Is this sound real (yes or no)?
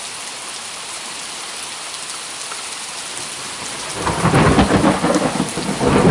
yes